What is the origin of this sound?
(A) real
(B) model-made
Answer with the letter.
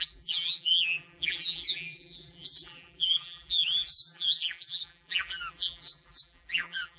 B